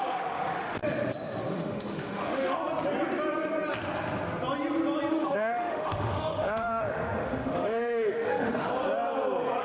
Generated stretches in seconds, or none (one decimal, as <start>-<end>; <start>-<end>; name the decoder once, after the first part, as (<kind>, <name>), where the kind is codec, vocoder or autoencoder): 0.0-0.8 (autoencoder, DAC-VAE); 1.5-2.6; 5.1-8.7

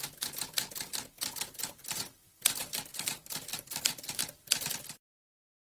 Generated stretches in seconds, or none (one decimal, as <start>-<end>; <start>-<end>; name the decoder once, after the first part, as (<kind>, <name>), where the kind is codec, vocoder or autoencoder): 2.9-4.2 (vocoder, BigVGAN v2)

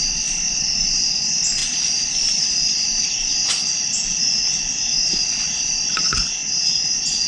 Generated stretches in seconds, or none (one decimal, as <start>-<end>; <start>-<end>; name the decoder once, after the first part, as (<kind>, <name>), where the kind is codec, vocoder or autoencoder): 6.4-7.3 (vocoder, Vocos)

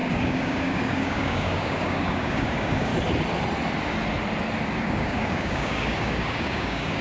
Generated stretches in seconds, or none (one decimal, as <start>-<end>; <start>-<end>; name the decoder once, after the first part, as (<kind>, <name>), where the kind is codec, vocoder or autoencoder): 0.0-2.9 (codec, DAC); 4.8-7.0

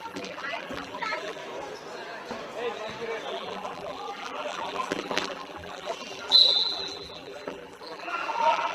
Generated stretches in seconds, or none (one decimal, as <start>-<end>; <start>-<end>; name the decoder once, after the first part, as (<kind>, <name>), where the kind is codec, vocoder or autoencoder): 0.0-1.4 (vocoder, BigVGAN v2); 3.3-8.7

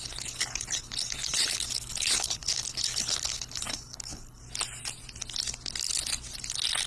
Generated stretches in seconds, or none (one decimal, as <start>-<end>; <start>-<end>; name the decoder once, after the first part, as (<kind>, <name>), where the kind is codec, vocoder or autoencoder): 0.0-4.4 (codec, HILCodec)

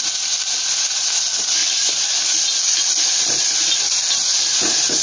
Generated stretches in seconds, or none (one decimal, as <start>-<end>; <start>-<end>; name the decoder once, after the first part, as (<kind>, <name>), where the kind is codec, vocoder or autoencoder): none

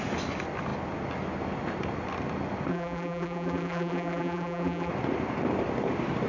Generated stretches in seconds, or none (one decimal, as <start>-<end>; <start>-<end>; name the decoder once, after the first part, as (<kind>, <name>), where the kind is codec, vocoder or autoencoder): 2.7-4.9 (vocoder, BigVGAN v2)